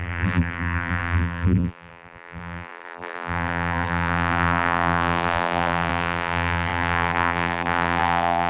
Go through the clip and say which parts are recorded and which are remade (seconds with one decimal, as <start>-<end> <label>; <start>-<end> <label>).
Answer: 0.0-8.5 remade